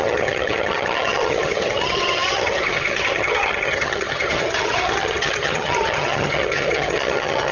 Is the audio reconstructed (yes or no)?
yes